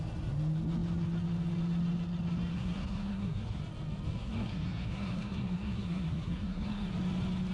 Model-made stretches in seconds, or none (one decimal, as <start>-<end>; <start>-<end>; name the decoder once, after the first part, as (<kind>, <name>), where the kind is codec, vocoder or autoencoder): 2.5-3.6 (codec, SNAC); 4.2-6.9